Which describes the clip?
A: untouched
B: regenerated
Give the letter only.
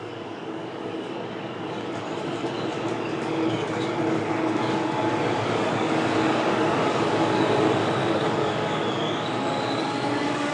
B